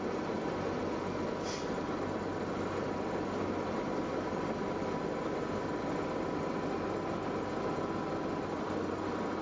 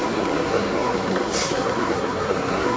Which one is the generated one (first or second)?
second